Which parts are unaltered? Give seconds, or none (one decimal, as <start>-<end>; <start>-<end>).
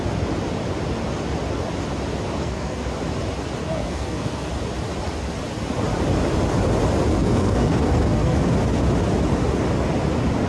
0.0-2.4; 2.9-3.6; 4.5-7.1; 8.4-10.5